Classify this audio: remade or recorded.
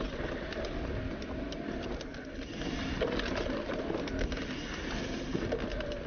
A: recorded